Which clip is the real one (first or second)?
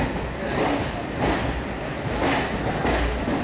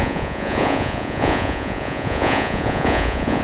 first